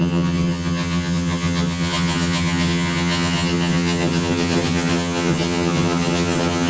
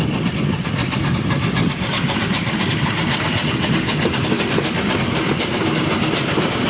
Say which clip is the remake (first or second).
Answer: first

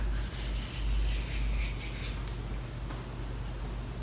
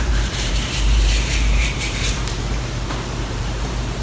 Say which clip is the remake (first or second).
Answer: second